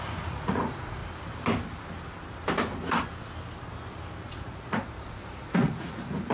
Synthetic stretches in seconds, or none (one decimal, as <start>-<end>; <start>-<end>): 0.0-1.0; 4.3-6.3